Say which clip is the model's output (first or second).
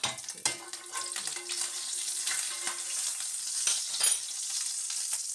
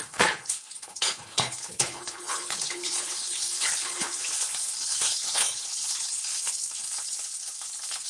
second